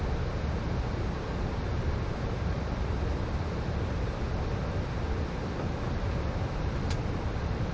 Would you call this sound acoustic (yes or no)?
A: no